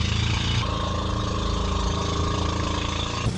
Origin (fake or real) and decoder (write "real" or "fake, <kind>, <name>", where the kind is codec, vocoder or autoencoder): real